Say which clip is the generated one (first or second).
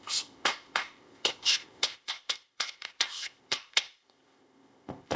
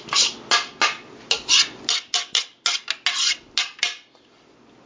first